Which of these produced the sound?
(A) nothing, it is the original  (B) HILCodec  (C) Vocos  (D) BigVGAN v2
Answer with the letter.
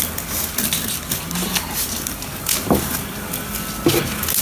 A